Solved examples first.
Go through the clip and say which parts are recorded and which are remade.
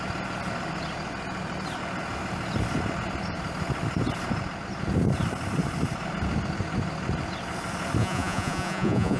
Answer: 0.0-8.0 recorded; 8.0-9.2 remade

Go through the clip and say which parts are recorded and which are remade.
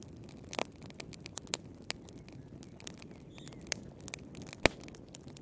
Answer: 0.0-5.4 recorded